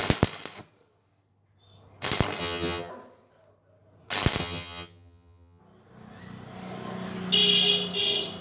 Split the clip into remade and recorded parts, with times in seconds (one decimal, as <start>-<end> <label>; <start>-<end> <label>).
0.0-2.4 recorded; 2.4-2.9 remade; 2.9-4.4 recorded; 4.4-5.6 remade; 5.6-8.4 recorded